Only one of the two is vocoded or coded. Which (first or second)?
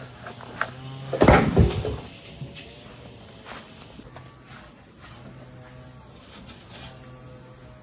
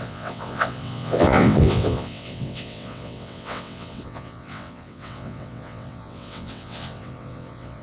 second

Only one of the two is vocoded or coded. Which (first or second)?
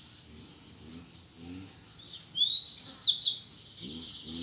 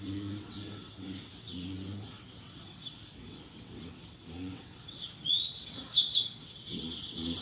second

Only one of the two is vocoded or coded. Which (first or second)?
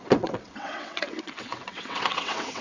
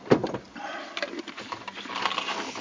first